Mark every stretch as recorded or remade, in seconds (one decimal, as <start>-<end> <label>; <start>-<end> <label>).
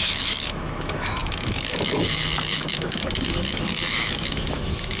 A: 0.0-5.0 remade